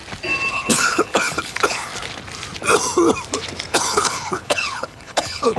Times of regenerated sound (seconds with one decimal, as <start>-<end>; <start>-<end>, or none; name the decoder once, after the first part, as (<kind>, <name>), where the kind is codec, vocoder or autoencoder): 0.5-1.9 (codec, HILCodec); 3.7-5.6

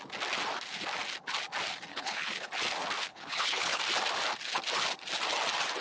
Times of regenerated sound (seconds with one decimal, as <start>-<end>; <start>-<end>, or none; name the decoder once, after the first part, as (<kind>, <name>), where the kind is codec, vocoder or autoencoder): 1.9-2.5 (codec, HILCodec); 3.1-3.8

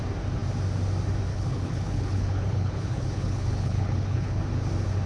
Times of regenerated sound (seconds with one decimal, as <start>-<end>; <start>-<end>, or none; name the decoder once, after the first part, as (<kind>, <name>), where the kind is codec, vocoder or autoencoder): 1.3-4.4 (codec, HILCodec)